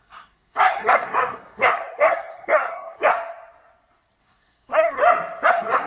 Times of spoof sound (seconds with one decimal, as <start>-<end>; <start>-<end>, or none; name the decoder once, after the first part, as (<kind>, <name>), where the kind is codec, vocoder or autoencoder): 0.0-3.1 (codec, SNAC); 4.2-5.0; 5.5-5.9